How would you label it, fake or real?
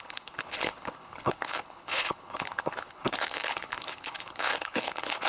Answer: fake